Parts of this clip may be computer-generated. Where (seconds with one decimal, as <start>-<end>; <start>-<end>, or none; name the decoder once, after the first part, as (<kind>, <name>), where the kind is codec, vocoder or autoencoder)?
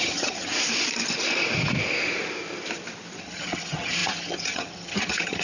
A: 0.0-0.5 (vocoder, HiFi-GAN); 3.2-5.4